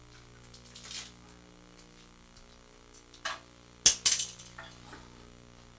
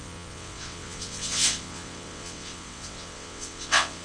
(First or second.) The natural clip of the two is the first